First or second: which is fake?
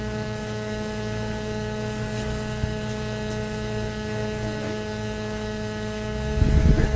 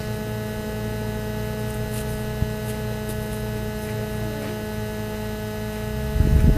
first